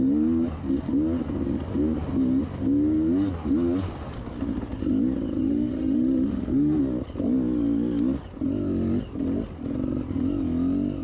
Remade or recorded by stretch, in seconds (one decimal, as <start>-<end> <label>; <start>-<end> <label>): 0.0-5.4 recorded; 5.4-6.8 remade; 6.8-11.0 recorded